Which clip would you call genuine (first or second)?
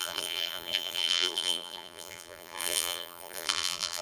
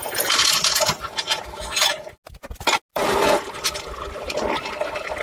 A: second